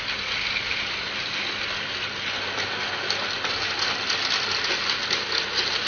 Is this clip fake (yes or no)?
no